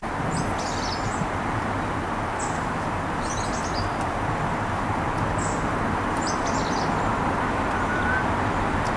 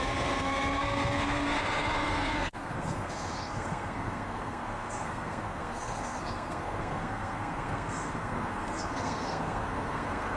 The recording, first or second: first